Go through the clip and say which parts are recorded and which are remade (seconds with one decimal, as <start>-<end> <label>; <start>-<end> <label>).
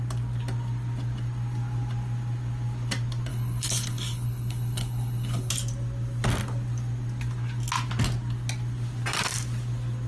0.0-3.3 recorded; 3.3-5.5 remade; 5.5-10.1 recorded